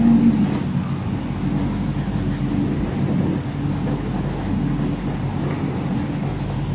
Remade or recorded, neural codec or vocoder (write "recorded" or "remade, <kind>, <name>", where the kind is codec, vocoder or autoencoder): recorded